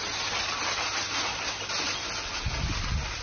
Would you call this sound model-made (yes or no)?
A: no